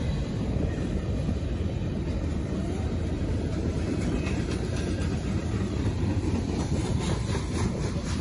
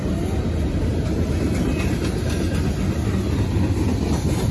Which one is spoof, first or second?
first